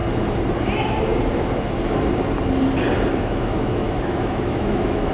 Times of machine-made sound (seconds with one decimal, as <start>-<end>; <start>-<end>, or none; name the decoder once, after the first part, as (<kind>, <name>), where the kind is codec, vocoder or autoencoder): 3.1-5.1 (autoencoder, DAC-VAE)